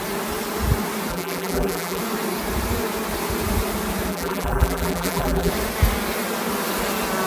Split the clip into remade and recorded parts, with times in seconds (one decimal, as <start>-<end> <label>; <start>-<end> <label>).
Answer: 0.0-1.1 recorded; 1.1-2.0 remade; 2.0-4.1 recorded; 4.1-5.5 remade; 5.5-7.3 recorded